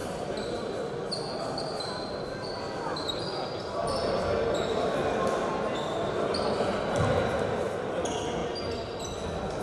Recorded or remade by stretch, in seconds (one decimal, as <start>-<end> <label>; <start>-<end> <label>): 0.0-1.8 remade; 1.8-9.6 recorded